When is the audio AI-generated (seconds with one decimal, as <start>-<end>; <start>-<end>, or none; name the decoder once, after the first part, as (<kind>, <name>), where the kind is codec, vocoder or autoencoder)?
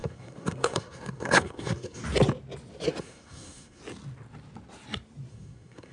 0.0-2.0 (codec, SNAC); 3.0-3.8; 5.3-5.9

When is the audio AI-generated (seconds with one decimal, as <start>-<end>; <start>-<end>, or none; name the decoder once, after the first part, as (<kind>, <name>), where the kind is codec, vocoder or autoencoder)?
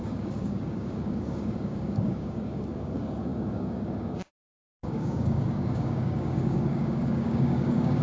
0.0-8.0 (codec, DAC)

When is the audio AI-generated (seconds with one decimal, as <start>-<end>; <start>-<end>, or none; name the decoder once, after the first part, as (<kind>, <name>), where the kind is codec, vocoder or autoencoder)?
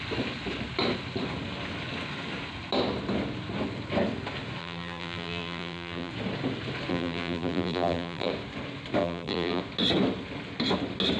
4.6-6.1 (vocoder, BigVGAN v2); 6.9-8.3; 9.0-9.6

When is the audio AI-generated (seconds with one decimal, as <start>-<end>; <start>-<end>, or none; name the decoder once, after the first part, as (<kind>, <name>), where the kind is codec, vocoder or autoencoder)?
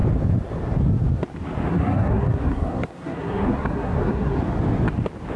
1.7-4.4 (codec, SNAC)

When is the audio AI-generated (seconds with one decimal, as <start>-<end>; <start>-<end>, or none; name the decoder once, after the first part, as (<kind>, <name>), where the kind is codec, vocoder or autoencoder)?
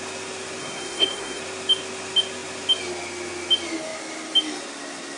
0.6-1.4 (codec, SNAC)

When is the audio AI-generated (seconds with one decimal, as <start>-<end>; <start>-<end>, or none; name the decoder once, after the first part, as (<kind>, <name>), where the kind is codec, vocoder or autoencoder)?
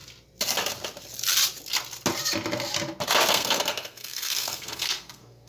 3.3-5.5 (codec, SNAC)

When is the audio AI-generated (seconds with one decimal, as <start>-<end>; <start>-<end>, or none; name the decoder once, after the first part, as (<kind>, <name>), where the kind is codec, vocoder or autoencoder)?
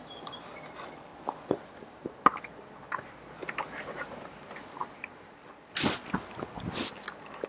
none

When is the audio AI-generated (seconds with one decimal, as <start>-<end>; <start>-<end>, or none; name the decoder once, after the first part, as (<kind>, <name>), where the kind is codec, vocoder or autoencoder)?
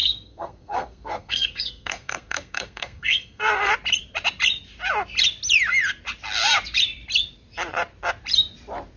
0.0-3.7 (codec, SNAC)